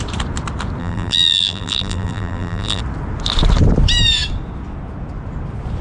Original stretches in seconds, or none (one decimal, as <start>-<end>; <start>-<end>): 0.0-0.8; 2.8-5.8

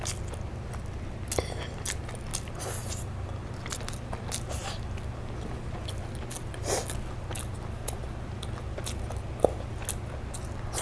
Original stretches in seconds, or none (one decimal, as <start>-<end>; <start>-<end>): 0.0-10.8

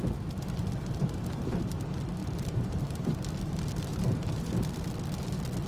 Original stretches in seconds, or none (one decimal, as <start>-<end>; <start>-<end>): 0.0-2.2; 3.1-3.9; 4.5-5.7

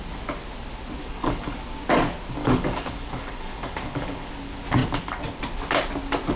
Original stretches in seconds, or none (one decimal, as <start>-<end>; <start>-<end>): 0.0-1.0; 1.6-2.4; 4.3-6.4

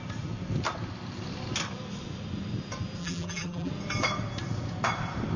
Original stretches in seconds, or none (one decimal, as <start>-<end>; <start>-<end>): 0.0-3.0; 3.7-5.4

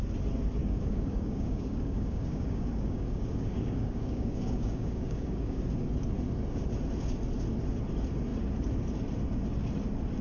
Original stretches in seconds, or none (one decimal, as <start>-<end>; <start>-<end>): 0.0-0.6; 5.6-10.2

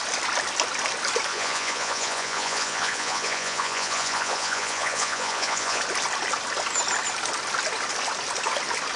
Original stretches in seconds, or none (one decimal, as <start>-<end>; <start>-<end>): 0.0-1.3; 5.8-9.0

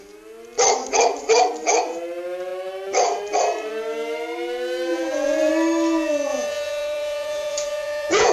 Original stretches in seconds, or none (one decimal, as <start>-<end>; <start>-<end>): 0.0-4.9; 5.5-6.3